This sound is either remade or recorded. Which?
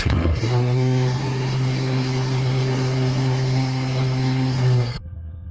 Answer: remade